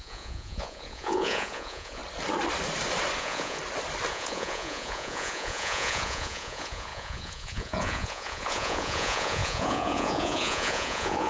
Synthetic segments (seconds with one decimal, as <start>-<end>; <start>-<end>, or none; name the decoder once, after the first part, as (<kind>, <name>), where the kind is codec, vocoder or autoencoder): 0.0-2.0 (vocoder, Vocos); 3.2-3.6; 4.1-11.3